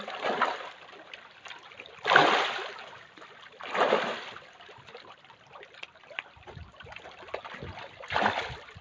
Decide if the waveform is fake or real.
fake